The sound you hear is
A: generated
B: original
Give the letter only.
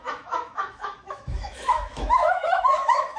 A